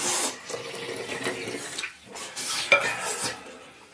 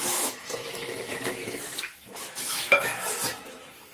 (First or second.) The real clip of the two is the first